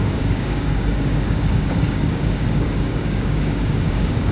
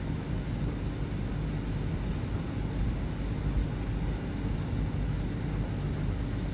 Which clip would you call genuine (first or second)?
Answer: second